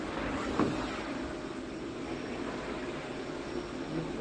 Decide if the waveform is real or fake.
real